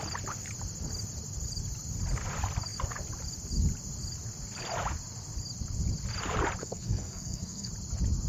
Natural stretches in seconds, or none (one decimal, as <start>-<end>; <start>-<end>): 0.0-6.6; 7.7-8.3